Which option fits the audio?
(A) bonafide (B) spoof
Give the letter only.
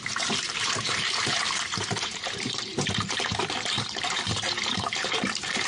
B